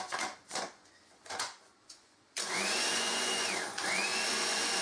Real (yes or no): no